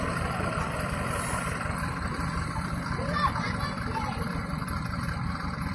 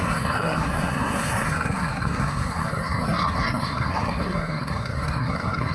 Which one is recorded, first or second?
first